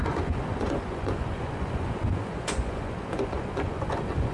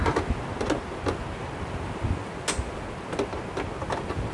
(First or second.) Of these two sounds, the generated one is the first